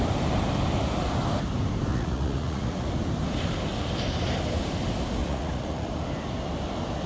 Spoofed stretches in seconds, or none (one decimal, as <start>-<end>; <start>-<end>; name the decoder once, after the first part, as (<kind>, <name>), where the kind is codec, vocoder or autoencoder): 1.9-2.9 (vocoder, Vocos); 5.2-5.9

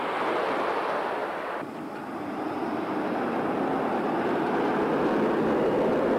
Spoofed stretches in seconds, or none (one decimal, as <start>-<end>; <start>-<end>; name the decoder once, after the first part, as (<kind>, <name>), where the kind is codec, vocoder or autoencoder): 1.2-2.9 (vocoder, BigVGAN v2); 3.7-4.7